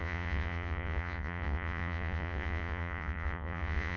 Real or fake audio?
fake